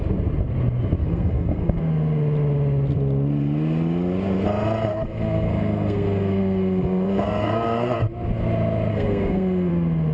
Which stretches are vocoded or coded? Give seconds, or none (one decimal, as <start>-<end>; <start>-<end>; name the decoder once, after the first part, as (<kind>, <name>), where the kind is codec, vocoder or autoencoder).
1.0-1.8 (codec, SNAC); 4.9-8.0; 8.9-9.7